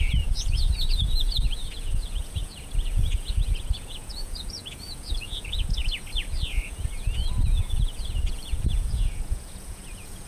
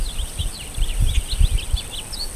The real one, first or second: second